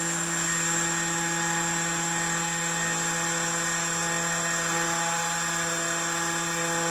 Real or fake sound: real